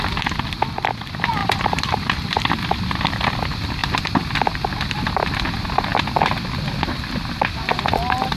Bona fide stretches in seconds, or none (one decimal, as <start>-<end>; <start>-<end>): 0.0-1.4; 3.0-8.4